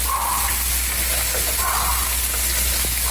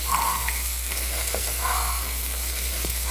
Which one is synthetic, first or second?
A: second